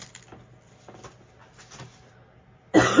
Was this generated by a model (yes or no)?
no